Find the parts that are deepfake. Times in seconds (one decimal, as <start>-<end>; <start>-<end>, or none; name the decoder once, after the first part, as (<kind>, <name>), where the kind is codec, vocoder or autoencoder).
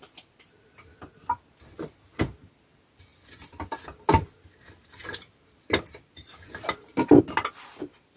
none